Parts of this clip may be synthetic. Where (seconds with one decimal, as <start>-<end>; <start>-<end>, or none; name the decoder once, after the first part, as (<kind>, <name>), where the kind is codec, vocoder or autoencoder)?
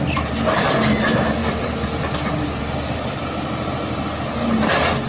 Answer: 1.4-2.6 (vocoder, BigVGAN v2)